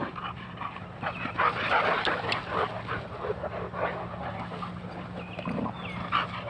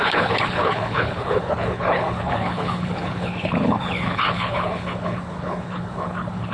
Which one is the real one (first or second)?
first